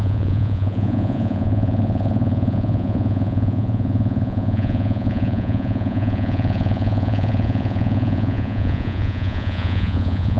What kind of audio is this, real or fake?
fake